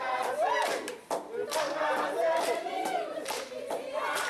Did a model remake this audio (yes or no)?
no